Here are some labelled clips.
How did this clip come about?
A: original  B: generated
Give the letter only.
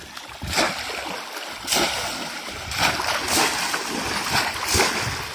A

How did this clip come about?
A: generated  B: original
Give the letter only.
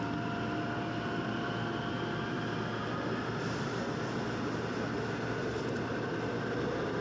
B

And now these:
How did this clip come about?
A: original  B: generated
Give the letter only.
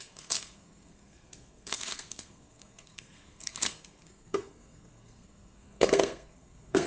B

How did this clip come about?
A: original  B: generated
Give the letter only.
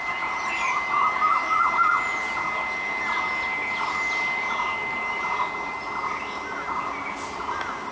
A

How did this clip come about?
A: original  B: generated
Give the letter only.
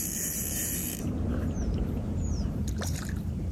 B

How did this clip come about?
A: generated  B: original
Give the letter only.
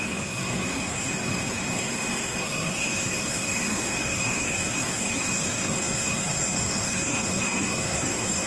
A